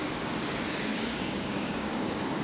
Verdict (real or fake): fake